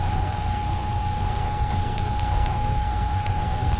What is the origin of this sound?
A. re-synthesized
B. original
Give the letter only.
A